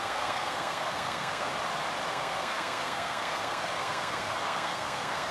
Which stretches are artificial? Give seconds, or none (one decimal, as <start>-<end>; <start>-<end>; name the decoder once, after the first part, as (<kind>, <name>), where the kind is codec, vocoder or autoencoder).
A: 0.0-1.5 (codec, SNAC); 2.1-5.3